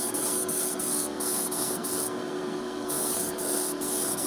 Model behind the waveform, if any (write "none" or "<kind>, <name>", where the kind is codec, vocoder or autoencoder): codec, SNAC